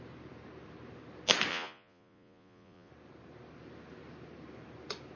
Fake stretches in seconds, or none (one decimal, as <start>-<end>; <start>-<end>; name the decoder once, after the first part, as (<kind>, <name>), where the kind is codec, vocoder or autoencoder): 1.5-2.9 (vocoder, Vocos)